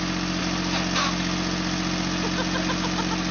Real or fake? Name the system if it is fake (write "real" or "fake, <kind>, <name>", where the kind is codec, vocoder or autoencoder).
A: real